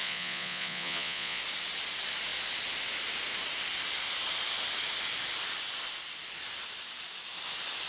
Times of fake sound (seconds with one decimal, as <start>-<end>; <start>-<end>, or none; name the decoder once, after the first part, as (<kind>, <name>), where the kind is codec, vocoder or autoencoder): 0.0-1.4 (vocoder, Vocos)